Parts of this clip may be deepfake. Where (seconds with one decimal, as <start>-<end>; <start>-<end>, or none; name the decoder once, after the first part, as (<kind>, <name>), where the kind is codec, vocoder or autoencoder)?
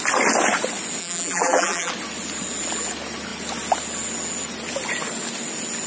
1.0-1.9 (vocoder, BigVGAN v2)